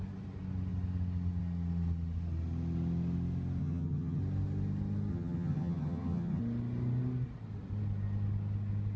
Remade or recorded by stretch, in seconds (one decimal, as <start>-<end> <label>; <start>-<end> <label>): 0.0-3.6 recorded; 3.6-4.2 remade; 4.2-5.1 recorded; 5.1-6.4 remade; 6.4-9.0 recorded